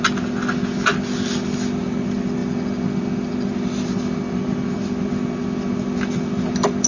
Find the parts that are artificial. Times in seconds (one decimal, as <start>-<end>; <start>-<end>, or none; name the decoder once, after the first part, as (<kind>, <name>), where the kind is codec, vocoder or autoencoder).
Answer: none